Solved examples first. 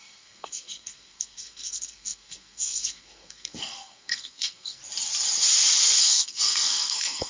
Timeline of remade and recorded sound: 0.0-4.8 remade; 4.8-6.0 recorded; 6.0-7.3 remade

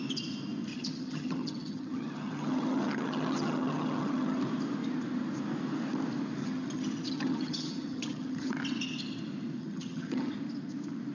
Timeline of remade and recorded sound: 0.0-0.7 recorded; 0.7-4.4 remade; 4.4-6.4 recorded; 6.4-8.5 remade; 8.5-9.6 recorded; 9.6-10.3 remade; 10.3-11.1 recorded

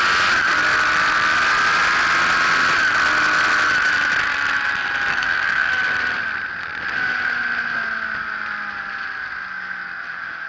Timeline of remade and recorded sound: 0.0-5.1 recorded; 5.1-5.7 remade; 5.7-10.5 recorded

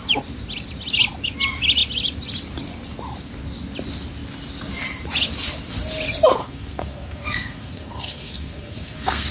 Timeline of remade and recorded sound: 0.0-6.4 recorded; 6.4-9.3 remade